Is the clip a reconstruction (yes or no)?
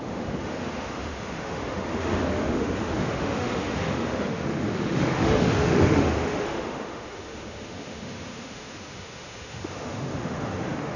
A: yes